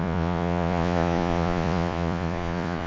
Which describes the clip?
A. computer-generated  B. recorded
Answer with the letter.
A